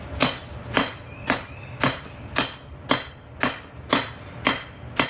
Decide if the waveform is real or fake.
real